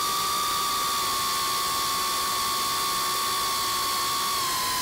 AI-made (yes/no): no